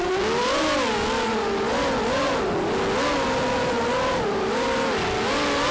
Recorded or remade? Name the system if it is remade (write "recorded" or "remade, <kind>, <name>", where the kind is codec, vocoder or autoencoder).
recorded